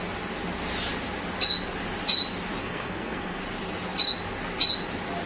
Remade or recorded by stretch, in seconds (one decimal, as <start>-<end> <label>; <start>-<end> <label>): 0.0-2.6 recorded; 2.6-3.4 remade; 3.4-5.3 recorded